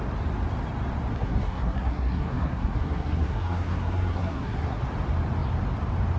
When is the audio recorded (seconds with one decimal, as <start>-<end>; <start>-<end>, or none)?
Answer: 0.0-1.1; 4.8-6.2